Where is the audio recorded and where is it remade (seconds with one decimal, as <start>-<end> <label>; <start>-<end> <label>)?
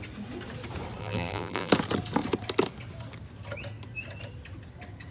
0.0-1.0 recorded; 1.0-1.7 remade; 1.7-5.1 recorded